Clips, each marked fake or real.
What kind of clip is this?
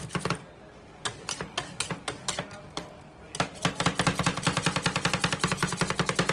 real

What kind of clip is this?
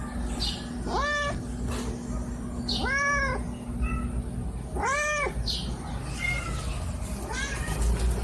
real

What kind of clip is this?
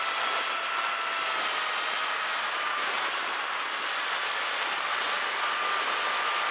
real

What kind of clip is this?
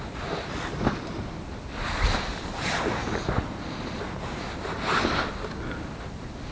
real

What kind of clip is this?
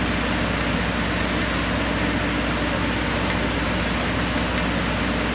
real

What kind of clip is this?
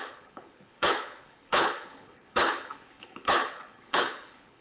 fake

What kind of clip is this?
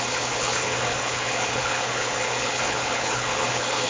fake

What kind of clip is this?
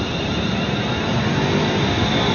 real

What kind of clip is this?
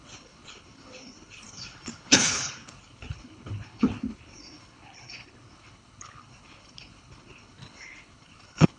fake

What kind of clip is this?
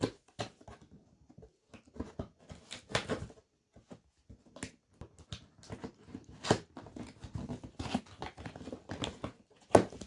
real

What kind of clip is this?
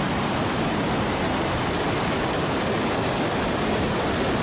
real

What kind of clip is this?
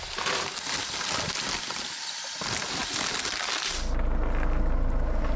real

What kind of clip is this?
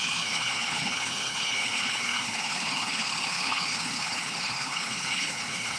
fake